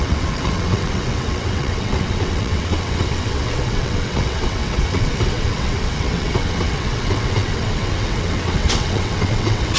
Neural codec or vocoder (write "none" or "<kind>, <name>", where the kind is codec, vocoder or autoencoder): vocoder, WaveNeXt